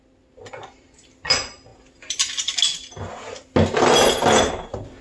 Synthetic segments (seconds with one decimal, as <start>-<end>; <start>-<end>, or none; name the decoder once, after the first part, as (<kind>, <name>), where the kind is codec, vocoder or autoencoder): none